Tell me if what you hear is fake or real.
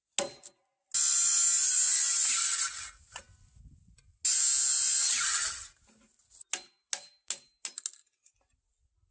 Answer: real